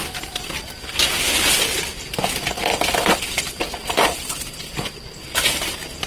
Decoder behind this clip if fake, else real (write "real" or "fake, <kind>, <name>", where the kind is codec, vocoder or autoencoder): real